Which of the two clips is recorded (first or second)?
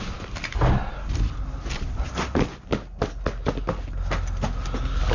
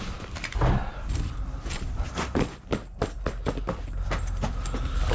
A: first